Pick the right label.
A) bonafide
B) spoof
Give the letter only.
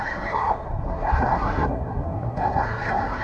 B